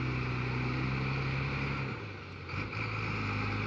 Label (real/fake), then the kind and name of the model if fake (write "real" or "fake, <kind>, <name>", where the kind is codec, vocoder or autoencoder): real